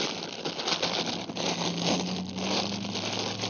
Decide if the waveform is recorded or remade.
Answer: recorded